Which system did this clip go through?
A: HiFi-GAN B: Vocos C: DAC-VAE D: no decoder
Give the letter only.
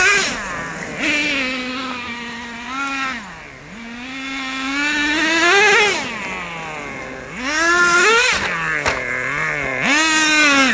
D